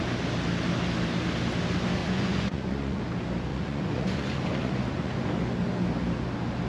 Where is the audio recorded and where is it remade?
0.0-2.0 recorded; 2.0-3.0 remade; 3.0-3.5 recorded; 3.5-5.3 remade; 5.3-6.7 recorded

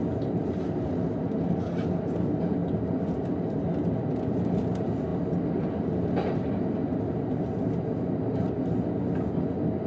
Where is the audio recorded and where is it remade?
0.0-9.9 recorded

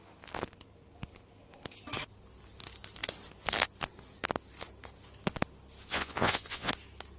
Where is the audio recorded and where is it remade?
0.0-5.9 recorded; 5.9-6.7 remade; 6.7-7.2 recorded

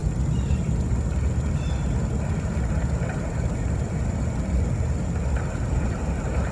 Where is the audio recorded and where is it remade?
0.0-6.5 recorded

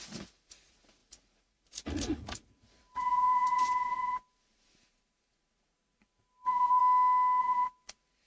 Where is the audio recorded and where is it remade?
0.0-6.8 remade; 6.8-7.4 recorded; 7.4-8.3 remade

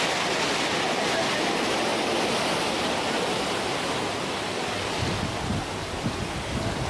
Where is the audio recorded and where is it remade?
0.0-6.9 recorded

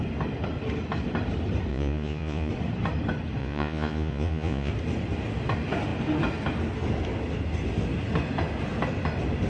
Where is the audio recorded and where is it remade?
0.0-1.7 recorded; 1.7-2.5 remade; 2.5-3.4 recorded; 3.4-4.7 remade; 4.7-9.5 recorded